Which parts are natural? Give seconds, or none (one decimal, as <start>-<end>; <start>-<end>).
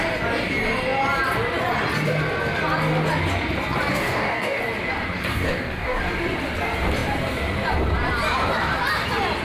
0.0-3.9; 4.6-5.3; 6.0-9.4